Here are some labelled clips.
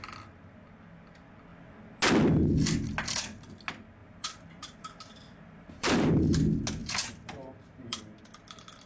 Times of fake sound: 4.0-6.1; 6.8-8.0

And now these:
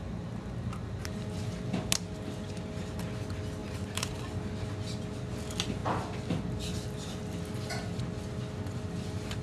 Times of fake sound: 3.6-4.2

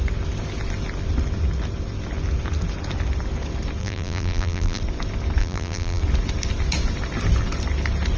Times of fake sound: 3.8-4.8; 5.4-6.0

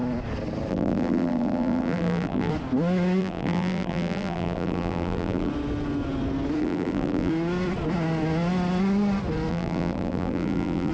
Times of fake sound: 0.7-2.5; 3.2-5.5; 6.6-7.3; 9.5-10.9

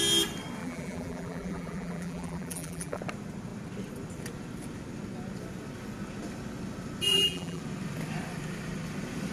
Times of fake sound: 0.6-3.0; 7.1-7.6

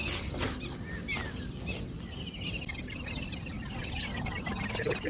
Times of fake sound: none

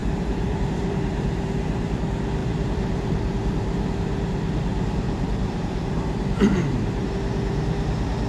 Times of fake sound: 0.0-2.0; 2.4-7.1

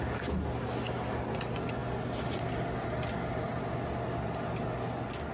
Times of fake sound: none